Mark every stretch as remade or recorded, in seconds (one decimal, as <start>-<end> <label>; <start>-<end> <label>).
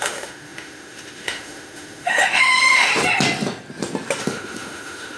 0.0-2.9 remade; 2.9-4.2 recorded; 4.2-5.2 remade